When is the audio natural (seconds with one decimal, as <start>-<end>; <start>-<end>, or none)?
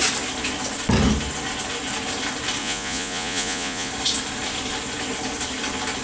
0.0-2.6; 3.9-6.0